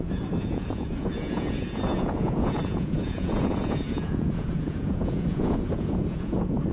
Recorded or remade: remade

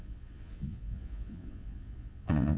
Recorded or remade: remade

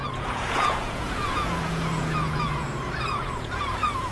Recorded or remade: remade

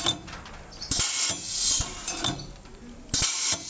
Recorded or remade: recorded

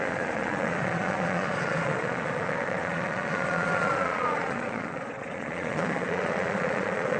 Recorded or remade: remade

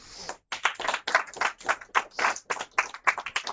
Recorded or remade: recorded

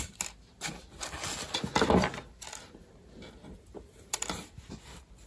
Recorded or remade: recorded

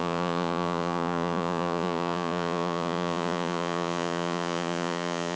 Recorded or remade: remade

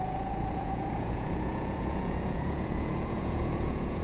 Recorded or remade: remade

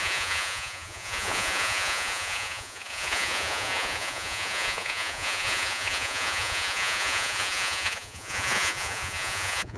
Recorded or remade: remade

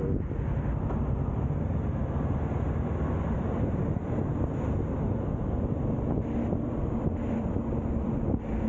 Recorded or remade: recorded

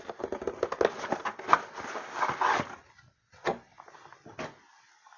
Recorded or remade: recorded